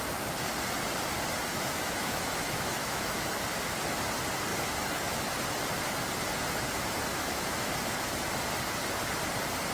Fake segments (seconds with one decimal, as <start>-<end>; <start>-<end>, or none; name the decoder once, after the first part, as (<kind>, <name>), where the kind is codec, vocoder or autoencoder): 1.5-3.3 (autoencoder, DAC-VAE); 7.1-7.7